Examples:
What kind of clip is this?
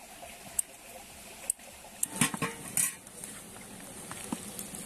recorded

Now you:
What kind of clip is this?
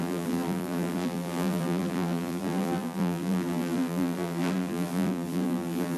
remade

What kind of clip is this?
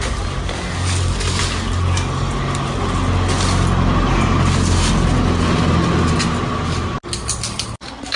recorded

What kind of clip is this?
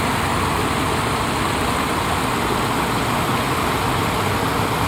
recorded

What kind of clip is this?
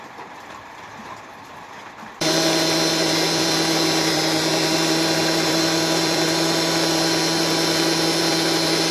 remade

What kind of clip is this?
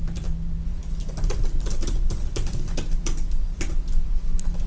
remade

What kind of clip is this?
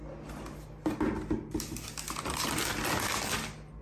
recorded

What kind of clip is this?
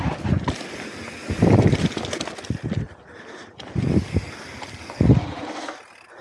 recorded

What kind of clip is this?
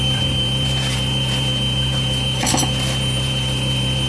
remade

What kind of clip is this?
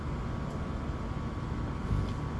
recorded